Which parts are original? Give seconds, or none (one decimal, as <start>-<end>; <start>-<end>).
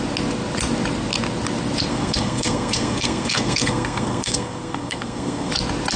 0.0-1.9; 5.5-6.0